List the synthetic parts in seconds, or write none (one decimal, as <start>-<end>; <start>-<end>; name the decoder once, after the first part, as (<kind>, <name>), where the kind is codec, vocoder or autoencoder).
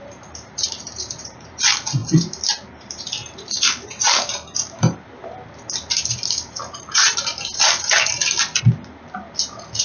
0.0-5.2 (vocoder, BigVGAN v2); 5.9-8.2